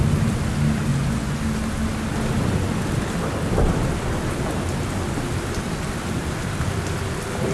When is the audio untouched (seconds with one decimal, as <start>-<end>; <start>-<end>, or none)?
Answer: 0.0-0.9; 1.4-7.5